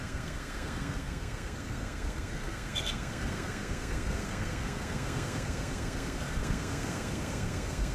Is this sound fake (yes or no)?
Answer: yes